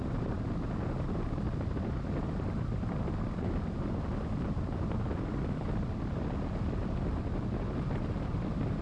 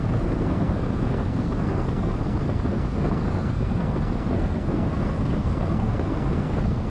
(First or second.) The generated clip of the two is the second